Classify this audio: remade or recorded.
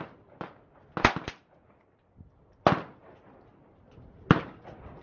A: recorded